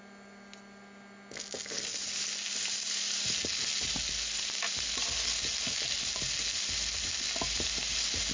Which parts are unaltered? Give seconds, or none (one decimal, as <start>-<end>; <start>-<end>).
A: 0.0-8.3